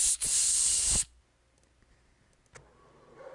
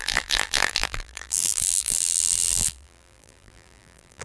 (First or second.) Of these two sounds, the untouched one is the first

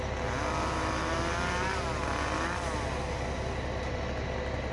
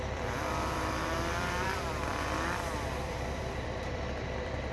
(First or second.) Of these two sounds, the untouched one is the first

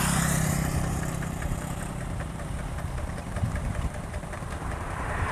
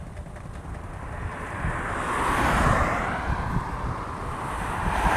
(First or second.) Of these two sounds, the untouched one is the second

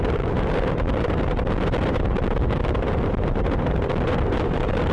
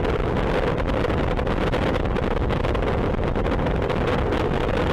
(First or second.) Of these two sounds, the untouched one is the second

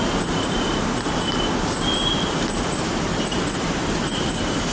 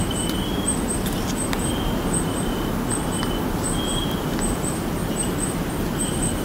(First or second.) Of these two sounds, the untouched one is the second